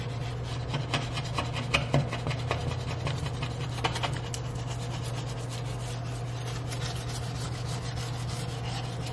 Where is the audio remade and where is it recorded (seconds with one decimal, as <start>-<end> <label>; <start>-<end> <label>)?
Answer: 0.0-9.1 recorded